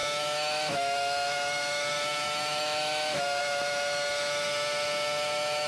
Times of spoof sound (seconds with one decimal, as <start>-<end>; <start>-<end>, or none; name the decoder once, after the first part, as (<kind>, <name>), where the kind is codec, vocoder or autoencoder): 0.0-5.7 (autoencoder, DAC-VAE)